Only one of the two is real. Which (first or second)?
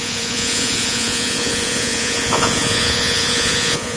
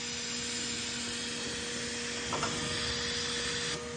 second